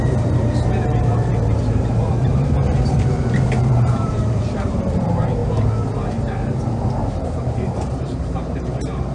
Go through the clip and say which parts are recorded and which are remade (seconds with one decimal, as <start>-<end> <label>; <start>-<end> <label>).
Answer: 0.0-5.4 remade; 5.4-7.0 recorded; 7.0-9.1 remade